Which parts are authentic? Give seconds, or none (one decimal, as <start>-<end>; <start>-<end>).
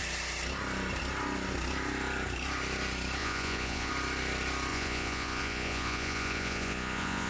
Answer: 0.0-3.2; 3.9-4.7